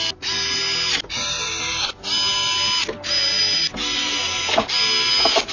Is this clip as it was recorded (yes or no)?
yes